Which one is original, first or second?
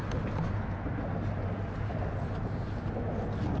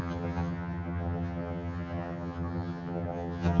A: first